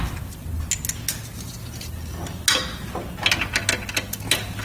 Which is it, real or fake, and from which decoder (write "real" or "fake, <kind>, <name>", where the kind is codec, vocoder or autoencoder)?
real